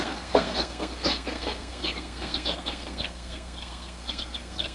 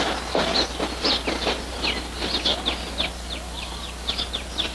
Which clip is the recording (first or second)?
second